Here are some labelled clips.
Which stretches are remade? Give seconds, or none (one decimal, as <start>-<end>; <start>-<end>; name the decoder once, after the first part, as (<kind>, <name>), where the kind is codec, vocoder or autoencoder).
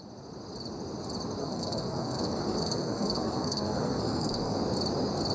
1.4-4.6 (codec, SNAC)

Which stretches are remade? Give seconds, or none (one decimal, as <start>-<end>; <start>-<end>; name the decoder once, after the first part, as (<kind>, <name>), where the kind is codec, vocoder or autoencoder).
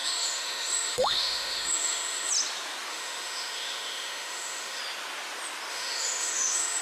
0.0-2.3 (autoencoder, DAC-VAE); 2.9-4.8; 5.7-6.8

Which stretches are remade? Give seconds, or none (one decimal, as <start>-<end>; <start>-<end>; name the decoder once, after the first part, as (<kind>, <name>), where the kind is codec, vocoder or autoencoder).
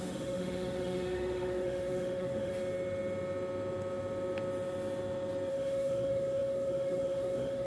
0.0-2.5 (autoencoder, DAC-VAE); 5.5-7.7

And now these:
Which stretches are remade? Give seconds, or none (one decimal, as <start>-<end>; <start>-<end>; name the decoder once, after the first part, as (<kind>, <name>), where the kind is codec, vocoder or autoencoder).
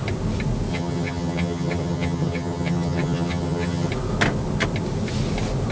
0.7-3.9 (vocoder, HiFi-GAN)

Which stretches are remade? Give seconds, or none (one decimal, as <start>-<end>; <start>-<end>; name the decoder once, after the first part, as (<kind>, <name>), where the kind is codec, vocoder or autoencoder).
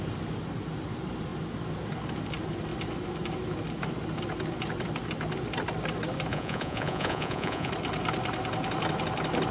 6.3-7.7 (vocoder, Vocos)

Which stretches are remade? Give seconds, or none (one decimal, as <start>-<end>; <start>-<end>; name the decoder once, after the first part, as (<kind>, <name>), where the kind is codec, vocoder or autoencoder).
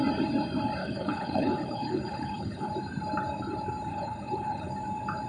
0.8-2.7 (codec, HILCodec); 3.9-4.7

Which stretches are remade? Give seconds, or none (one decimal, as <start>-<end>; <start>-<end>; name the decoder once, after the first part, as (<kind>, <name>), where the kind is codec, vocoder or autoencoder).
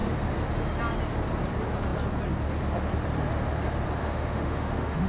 4.0-5.1 (autoencoder, DAC-VAE)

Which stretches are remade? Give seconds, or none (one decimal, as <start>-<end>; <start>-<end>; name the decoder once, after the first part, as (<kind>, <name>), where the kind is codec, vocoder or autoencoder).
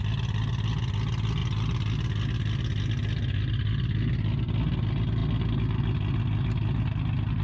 none